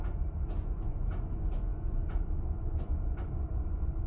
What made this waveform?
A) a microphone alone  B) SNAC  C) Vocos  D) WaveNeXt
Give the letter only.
C